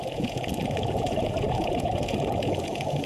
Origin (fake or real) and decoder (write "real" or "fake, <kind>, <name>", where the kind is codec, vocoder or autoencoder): fake, vocoder, Vocos